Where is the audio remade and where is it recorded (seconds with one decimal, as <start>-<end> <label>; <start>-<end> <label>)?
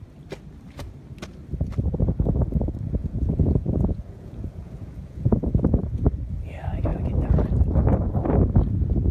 0.0-3.0 recorded; 3.0-5.6 remade; 5.6-9.1 recorded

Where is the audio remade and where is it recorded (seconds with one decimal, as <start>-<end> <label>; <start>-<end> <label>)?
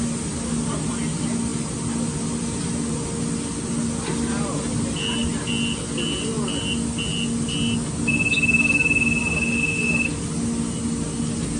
0.0-11.6 recorded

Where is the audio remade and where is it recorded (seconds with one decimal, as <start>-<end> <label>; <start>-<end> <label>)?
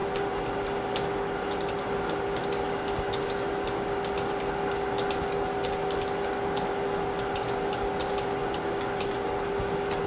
0.0-10.1 recorded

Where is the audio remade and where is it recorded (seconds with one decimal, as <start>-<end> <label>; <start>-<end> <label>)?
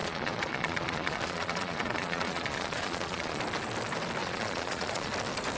0.0-3.4 remade; 3.4-4.2 recorded; 4.2-5.1 remade; 5.1-5.6 recorded